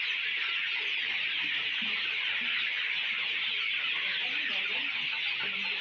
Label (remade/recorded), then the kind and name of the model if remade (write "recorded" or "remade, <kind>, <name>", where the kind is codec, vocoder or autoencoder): recorded